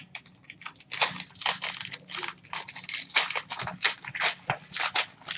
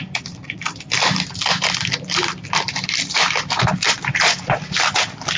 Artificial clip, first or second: second